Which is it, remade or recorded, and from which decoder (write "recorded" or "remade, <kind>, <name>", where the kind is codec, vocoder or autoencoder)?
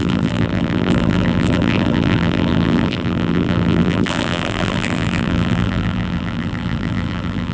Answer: remade, vocoder, BigVGAN v2